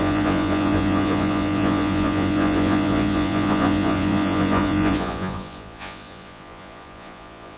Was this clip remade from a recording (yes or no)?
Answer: yes